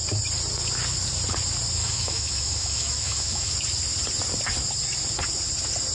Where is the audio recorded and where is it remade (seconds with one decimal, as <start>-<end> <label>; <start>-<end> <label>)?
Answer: 0.0-1.8 recorded; 1.8-3.5 remade; 3.5-5.9 recorded